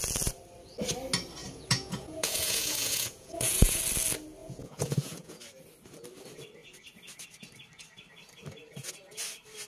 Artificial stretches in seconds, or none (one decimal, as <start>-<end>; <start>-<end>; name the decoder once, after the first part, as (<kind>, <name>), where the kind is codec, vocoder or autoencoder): 1.4-3.8 (vocoder, Vocos); 4.4-5.4